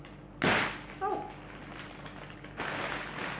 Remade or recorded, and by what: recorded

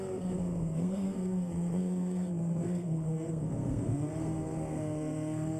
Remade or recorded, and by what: remade, codec, SNAC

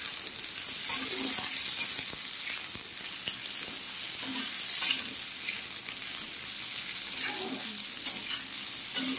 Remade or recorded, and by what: recorded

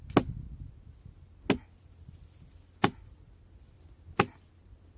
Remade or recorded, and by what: recorded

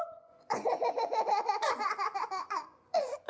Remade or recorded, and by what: remade, vocoder, Vocos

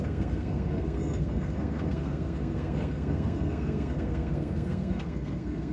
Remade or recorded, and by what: remade, codec, SNAC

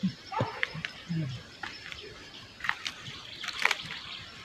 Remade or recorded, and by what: remade, vocoder, BigVGAN v2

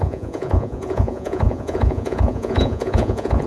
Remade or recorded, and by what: remade, vocoder, Vocos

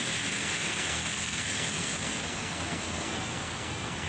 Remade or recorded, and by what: remade, codec, SNAC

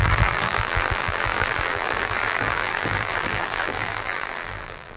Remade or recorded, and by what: remade, vocoder, BigVGAN v2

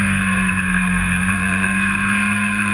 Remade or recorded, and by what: remade, codec, SNAC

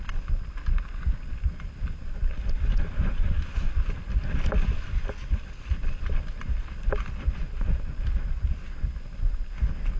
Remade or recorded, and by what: recorded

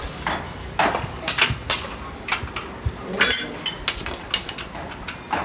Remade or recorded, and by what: recorded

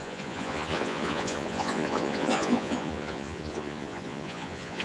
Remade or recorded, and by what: remade, vocoder, Vocos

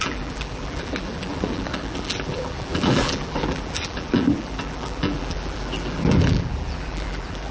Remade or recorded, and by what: remade, vocoder, BigVGAN v2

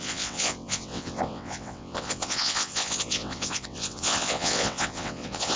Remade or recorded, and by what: remade, vocoder, WaveNeXt